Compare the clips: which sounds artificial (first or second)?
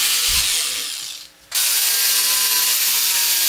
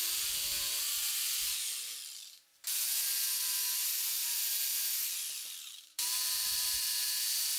second